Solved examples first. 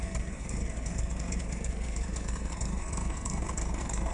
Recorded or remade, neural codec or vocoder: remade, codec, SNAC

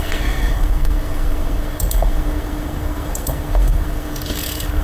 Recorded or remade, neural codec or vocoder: remade, codec, SNAC